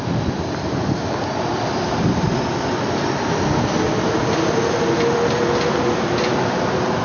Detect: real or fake real